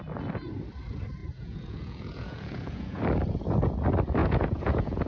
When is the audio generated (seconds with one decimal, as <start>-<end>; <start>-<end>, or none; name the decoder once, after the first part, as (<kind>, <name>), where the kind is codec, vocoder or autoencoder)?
1.2-3.0 (vocoder, Vocos); 4.2-5.1

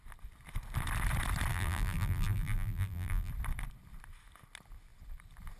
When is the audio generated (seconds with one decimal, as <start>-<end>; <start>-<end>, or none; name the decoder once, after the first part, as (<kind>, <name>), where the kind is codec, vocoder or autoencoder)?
1.5-3.3 (vocoder, BigVGAN v2)

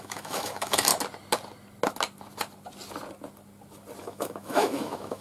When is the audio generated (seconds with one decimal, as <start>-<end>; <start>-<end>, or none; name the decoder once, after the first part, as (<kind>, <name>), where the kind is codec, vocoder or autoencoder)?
0.0-0.9 (autoencoder, DAC-VAE); 4.0-5.2

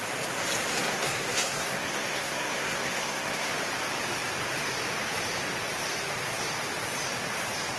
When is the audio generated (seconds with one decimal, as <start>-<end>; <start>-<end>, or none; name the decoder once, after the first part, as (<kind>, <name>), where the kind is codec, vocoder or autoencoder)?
0.7-3.5 (codec, SNAC)

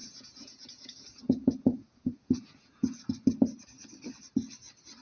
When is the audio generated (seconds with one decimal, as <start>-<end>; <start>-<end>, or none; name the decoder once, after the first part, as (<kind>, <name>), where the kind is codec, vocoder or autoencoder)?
0.0-3.0 (vocoder, Vocos)

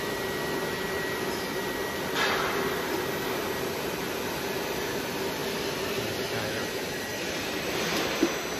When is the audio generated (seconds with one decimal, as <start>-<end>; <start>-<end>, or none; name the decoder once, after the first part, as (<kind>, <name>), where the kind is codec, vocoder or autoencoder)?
1.8-2.5 (vocoder, BigVGAN v2); 5.4-6.6; 7.1-7.8

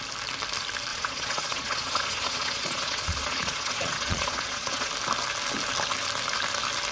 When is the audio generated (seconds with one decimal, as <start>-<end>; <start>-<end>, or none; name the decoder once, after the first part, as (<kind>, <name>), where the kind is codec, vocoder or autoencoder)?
0.9-4.9 (vocoder, Vocos)